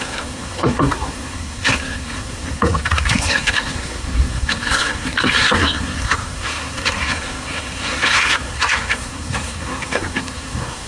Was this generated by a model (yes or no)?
yes